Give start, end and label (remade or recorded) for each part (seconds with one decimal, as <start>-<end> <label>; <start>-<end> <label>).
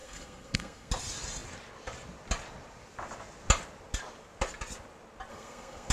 0.0-0.9 remade; 0.9-5.3 recorded; 5.3-5.9 remade